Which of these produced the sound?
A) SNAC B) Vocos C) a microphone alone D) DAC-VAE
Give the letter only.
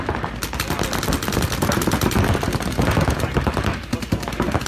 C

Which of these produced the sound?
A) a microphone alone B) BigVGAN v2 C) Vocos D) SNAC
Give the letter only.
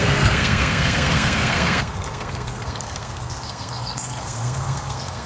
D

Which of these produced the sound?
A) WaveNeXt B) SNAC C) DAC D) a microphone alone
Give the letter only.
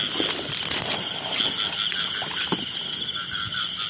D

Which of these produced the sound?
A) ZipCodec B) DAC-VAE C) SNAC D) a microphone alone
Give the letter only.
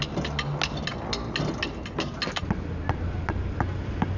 D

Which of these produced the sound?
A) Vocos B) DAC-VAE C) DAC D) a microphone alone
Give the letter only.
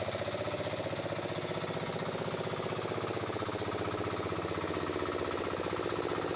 D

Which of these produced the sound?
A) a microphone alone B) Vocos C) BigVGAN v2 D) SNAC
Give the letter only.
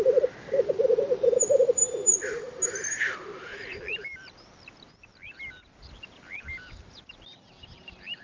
A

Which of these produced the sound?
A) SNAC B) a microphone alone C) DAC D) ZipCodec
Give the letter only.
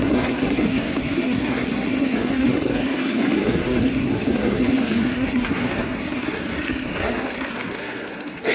A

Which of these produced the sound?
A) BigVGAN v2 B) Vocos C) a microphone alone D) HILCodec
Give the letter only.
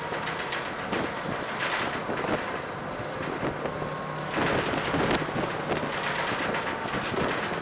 C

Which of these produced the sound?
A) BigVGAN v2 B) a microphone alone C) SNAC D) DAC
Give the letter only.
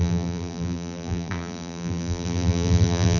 A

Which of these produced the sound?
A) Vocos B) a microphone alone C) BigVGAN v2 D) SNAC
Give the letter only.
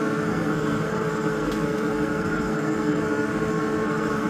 D